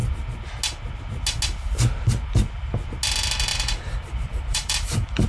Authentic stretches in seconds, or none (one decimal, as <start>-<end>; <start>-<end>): 0.0-3.5